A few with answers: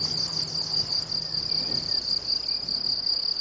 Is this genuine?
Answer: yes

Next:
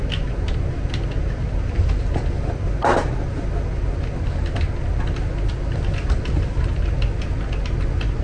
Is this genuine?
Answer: yes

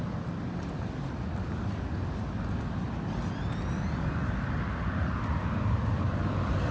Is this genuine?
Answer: yes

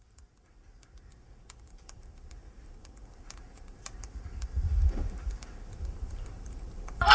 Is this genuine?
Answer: no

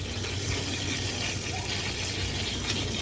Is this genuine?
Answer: yes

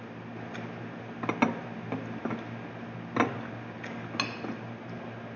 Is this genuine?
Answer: yes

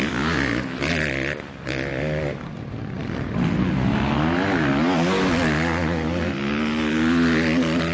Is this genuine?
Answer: yes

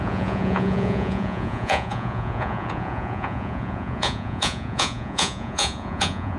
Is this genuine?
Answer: no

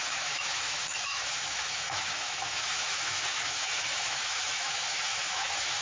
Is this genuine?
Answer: no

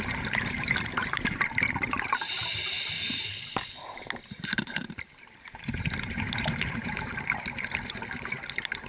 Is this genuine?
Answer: no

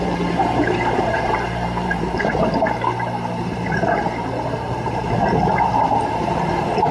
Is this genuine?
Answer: no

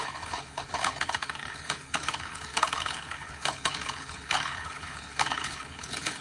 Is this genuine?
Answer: no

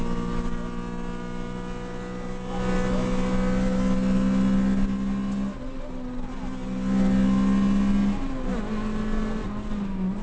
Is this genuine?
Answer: yes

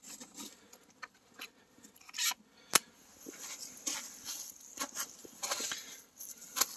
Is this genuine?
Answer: yes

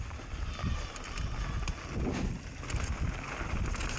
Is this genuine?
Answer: yes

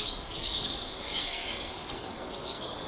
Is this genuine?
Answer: no